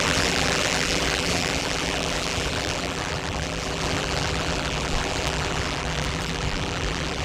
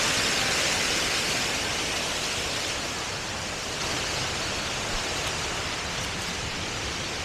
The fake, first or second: first